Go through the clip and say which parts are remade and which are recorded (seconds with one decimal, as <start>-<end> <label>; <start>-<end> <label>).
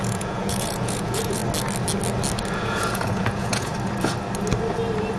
0.0-1.4 remade; 1.4-2.5 recorded; 2.5-3.7 remade; 3.7-5.2 recorded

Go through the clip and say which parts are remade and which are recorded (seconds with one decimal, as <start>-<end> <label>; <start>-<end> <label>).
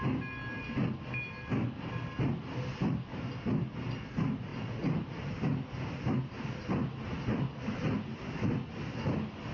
0.0-9.5 recorded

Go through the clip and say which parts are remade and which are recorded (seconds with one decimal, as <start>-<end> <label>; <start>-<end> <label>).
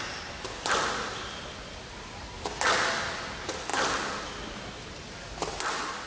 0.0-6.1 recorded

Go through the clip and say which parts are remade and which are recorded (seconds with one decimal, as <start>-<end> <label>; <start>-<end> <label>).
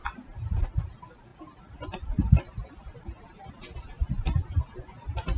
0.0-5.4 recorded